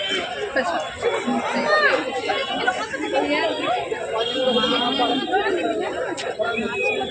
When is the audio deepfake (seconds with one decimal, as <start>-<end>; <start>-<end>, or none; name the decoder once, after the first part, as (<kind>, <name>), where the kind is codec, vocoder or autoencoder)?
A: none